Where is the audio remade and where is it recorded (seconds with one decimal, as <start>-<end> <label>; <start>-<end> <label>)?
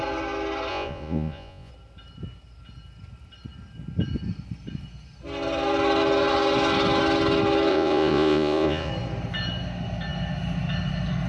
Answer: 0.0-0.7 recorded; 0.7-1.7 remade; 1.7-7.7 recorded; 7.7-8.9 remade; 8.9-11.3 recorded